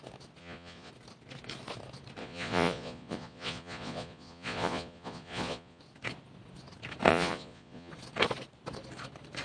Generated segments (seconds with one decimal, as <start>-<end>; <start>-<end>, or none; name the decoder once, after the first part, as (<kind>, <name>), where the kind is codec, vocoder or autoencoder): 0.4-0.9 (vocoder, Vocos); 2.2-5.8; 7.1-7.9